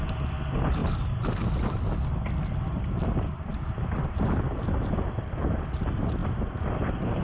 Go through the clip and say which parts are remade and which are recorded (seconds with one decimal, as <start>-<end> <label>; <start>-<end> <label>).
0.0-7.2 recorded